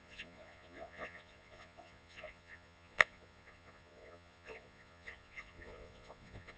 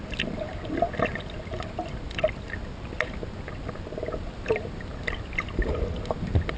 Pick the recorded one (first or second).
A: second